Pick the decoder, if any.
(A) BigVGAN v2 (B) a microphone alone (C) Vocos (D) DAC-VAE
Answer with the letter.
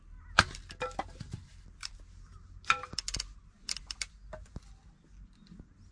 B